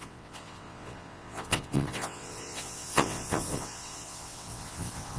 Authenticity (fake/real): fake